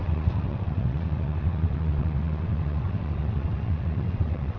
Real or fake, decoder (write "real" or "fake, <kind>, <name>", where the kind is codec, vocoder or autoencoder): fake, vocoder, WaveNeXt